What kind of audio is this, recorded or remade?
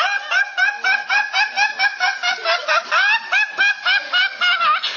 recorded